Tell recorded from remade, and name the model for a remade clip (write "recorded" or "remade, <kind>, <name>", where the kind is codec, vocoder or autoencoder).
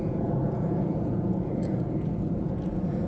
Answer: remade, vocoder, Vocos